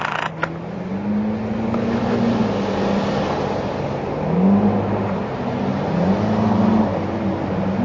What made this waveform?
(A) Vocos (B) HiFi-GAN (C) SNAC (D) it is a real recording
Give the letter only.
D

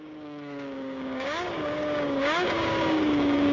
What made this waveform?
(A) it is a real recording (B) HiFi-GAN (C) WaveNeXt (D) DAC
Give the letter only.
D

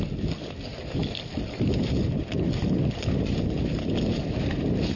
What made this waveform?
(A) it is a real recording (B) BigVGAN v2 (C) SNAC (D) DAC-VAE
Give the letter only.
A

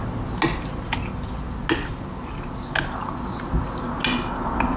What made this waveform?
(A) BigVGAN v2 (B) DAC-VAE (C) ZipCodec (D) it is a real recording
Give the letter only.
D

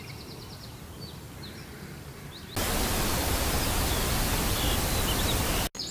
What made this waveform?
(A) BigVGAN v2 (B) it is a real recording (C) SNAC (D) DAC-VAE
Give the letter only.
B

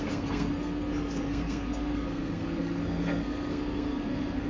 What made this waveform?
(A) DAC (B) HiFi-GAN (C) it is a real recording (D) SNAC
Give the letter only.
D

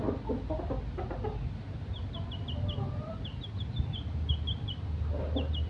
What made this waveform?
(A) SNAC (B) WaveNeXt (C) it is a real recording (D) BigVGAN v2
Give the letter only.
C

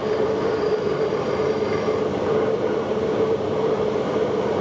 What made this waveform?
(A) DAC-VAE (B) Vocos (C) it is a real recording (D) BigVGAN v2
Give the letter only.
D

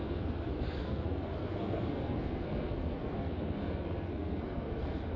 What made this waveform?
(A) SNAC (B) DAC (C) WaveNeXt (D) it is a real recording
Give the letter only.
A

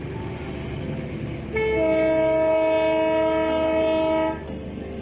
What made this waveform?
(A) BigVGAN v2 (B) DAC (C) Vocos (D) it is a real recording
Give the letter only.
D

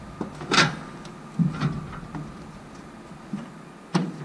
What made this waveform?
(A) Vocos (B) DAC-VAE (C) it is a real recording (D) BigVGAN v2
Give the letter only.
C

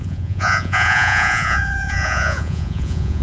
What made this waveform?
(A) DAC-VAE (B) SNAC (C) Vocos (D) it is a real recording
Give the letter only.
C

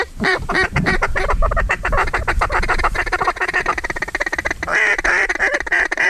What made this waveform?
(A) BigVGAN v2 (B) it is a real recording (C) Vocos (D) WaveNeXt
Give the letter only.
A